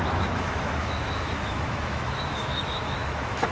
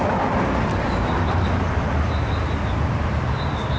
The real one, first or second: second